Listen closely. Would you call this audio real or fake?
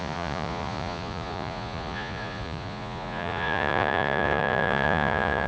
fake